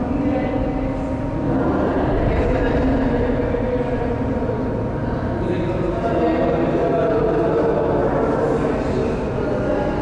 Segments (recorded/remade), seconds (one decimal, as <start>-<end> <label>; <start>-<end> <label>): 0.0-1.6 recorded; 1.6-2.8 remade; 2.8-5.0 recorded; 5.0-5.7 remade; 5.7-8.0 recorded; 8.0-9.1 remade; 9.1-10.0 recorded